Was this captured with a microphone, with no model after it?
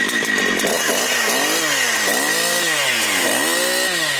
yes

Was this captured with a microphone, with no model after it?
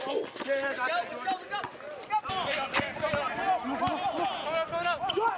yes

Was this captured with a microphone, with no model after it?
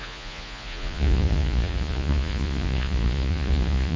no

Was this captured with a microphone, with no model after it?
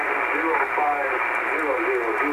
yes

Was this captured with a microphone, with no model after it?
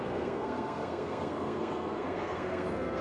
no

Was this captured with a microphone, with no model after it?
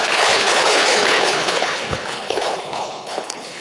no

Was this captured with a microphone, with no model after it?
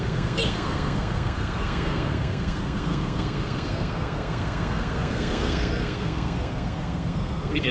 no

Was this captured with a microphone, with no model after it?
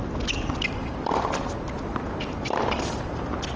yes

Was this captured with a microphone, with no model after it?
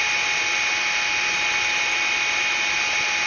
yes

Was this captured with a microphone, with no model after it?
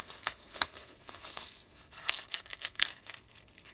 no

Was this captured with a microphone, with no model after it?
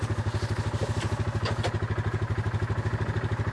yes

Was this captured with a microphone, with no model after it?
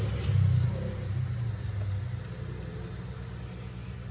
yes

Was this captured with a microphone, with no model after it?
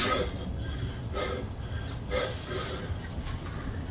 yes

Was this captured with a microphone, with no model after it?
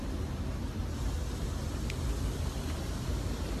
yes